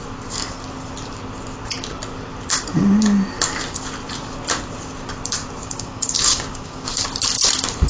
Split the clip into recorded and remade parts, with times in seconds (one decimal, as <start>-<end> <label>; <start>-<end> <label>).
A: 0.0-5.6 recorded; 5.6-7.1 remade; 7.1-7.9 recorded